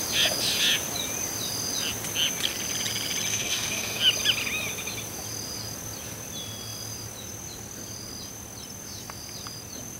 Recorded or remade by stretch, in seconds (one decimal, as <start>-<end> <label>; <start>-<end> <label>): 0.0-3.3 recorded; 3.3-4.0 remade; 4.0-10.0 recorded